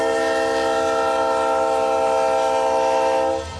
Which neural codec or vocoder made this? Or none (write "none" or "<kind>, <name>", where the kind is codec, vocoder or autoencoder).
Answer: none